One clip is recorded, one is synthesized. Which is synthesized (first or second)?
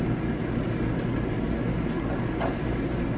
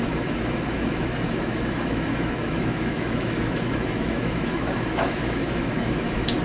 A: second